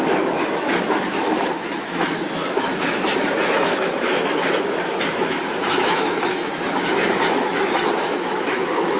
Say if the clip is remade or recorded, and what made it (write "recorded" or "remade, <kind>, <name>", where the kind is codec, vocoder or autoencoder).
remade, autoencoder, DAC-VAE